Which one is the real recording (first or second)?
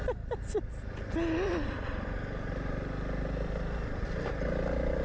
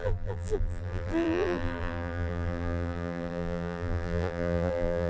first